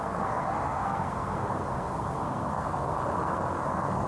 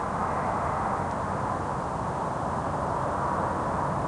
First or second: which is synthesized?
first